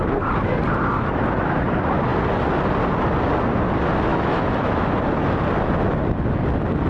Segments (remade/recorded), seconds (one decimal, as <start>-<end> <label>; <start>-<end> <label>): 0.0-4.1 recorded; 4.1-4.9 remade; 4.9-6.9 recorded